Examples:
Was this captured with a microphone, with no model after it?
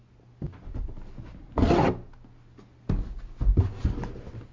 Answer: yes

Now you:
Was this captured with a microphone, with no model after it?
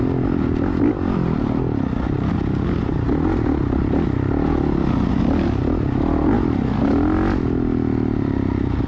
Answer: yes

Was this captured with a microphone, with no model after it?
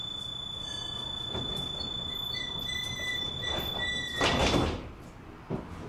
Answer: yes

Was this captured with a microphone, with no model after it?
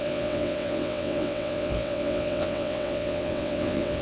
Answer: no